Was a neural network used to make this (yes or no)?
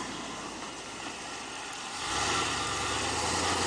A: no